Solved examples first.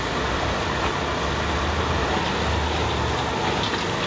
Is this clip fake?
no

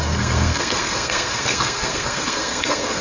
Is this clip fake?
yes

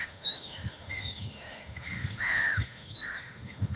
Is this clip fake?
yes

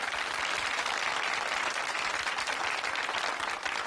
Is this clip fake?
no